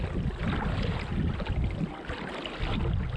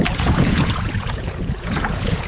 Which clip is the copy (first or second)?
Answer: second